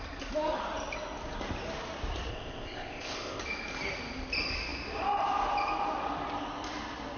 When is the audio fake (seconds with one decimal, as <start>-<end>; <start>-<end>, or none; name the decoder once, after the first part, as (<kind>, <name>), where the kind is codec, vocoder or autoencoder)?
2.3-3.4 (codec, ZipCodec)